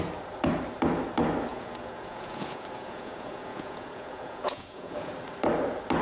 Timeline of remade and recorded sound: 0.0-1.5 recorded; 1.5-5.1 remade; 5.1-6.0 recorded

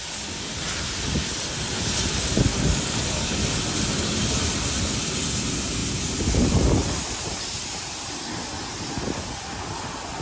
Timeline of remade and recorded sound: 0.0-2.5 recorded; 2.5-3.4 remade; 3.4-10.2 recorded

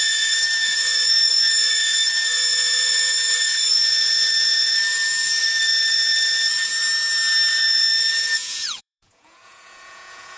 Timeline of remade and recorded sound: 0.0-6.7 remade; 6.7-7.5 recorded; 7.5-10.4 remade

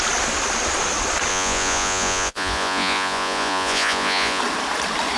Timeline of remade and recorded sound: 0.0-1.3 recorded; 1.3-4.4 remade; 4.4-5.2 recorded

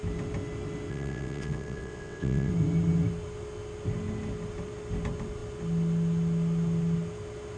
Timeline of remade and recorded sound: 0.0-0.9 recorded; 0.9-2.5 remade; 2.5-7.6 recorded

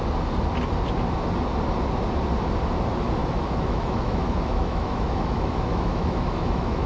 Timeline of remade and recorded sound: 0.0-3.2 recorded; 3.2-6.9 remade